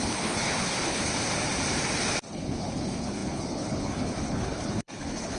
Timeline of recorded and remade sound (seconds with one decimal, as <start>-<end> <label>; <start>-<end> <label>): 0.0-1.1 remade; 1.1-2.3 recorded; 2.3-5.4 remade